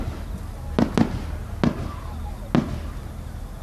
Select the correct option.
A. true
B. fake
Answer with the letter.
A